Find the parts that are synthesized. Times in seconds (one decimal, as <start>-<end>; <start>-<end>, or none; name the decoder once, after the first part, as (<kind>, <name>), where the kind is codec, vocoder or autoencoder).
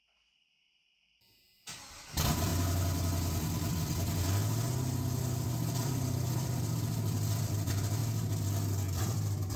0.0-2.5 (vocoder, BigVGAN v2); 3.7-4.4; 5.7-8.0; 9.0-9.6